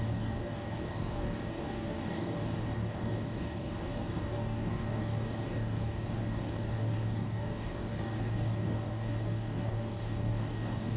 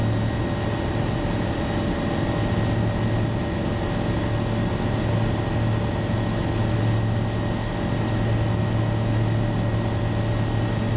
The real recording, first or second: second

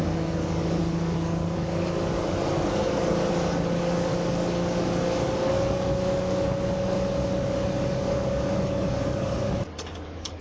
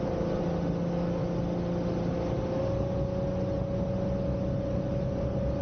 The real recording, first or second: second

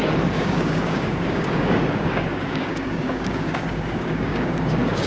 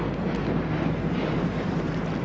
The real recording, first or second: second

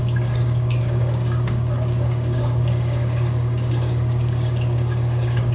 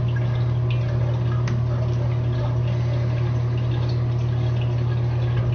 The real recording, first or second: second